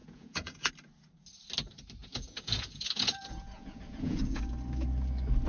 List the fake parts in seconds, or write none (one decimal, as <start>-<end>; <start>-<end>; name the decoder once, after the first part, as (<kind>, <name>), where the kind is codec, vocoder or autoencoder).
0.0-0.7 (vocoder, Vocos); 2.0-4.4